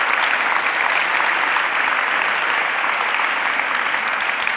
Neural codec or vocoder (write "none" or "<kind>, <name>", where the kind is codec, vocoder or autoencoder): none